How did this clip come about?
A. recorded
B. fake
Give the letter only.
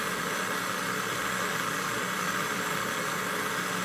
A